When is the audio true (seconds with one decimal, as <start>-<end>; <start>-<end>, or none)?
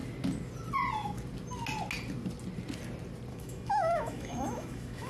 0.0-3.3